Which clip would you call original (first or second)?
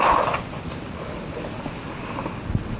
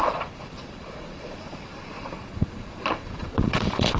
first